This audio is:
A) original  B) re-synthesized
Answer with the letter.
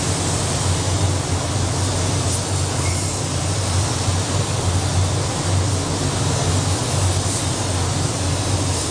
A